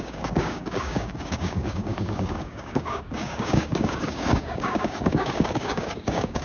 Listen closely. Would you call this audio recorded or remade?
remade